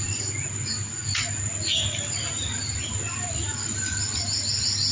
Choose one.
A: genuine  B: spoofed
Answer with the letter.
A